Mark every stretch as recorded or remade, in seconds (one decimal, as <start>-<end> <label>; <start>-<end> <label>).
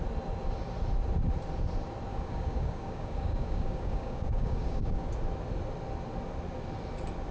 0.0-2.1 recorded; 2.1-5.1 remade; 5.1-7.3 recorded